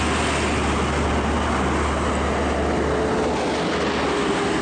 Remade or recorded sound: recorded